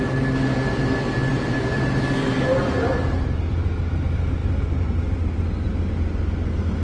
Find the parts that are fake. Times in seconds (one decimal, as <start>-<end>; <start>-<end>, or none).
none